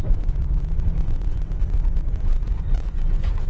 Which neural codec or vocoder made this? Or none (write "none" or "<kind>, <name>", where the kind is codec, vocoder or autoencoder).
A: vocoder, Vocos